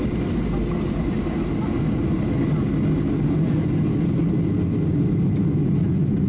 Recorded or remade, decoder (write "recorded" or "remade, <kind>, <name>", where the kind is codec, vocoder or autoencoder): recorded